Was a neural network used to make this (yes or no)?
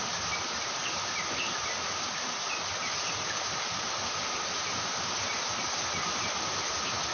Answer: no